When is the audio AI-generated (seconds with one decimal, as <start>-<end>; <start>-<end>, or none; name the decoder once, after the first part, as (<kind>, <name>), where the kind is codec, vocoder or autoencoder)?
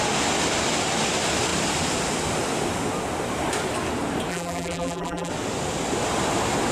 4.3-5.3 (vocoder, BigVGAN v2)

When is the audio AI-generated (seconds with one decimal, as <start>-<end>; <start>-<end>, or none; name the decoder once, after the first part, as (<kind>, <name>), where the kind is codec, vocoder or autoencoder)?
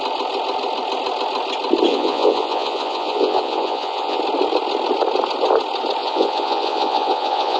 1.9-4.2 (vocoder, Vocos); 6.0-7.6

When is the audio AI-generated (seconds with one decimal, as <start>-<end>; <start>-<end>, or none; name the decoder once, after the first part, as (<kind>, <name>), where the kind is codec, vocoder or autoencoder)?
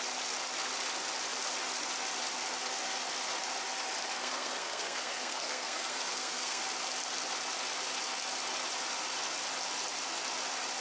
4.1-6.6 (codec, SNAC)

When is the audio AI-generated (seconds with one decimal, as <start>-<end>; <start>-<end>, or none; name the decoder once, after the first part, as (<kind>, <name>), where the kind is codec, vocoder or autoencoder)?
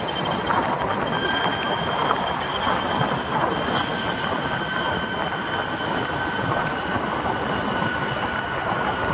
none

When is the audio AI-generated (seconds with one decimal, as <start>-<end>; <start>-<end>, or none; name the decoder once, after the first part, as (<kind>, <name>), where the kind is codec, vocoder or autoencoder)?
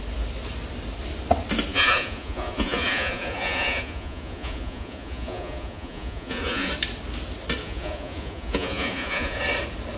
1.7-6.7 (vocoder, Vocos); 7.6-9.4